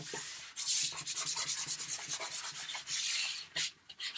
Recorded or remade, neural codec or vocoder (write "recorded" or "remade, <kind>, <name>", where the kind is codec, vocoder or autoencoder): recorded